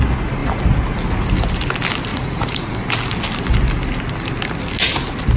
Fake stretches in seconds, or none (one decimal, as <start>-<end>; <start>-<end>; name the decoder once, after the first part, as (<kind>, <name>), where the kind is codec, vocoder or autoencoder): 2.1-2.7 (vocoder, Vocos)